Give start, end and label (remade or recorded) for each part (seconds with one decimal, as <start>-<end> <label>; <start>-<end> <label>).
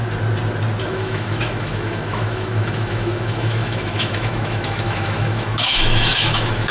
0.0-0.8 recorded; 0.8-6.7 remade